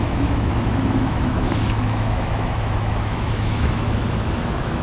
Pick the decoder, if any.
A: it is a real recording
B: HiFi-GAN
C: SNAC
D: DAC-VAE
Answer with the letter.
D